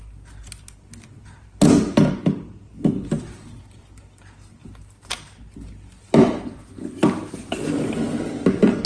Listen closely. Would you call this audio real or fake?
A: real